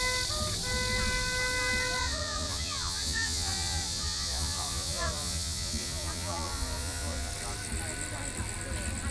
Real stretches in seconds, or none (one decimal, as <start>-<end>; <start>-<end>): 0.0-2.0; 7.3-9.1